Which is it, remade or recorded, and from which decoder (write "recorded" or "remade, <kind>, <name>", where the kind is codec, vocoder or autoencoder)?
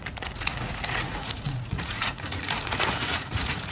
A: remade, vocoder, Vocos